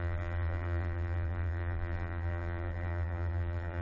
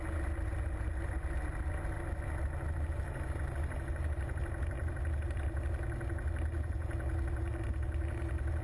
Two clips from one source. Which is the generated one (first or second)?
first